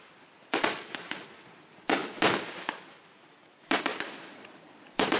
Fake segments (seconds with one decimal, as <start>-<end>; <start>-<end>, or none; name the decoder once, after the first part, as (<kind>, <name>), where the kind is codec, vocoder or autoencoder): 3.9-5.2 (vocoder, BigVGAN v2)